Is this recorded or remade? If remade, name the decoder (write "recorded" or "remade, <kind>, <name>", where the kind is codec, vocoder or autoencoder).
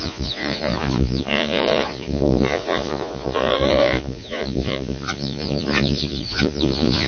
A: remade, vocoder, Vocos